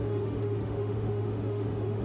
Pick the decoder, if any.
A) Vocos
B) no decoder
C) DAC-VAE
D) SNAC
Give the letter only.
C